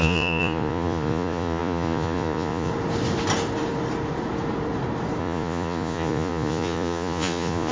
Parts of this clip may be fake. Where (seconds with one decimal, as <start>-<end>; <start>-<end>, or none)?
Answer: 0.0-2.7; 5.2-7.7